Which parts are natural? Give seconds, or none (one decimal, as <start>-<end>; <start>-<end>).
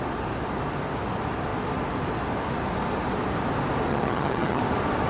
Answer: 0.0-3.9; 4.6-5.1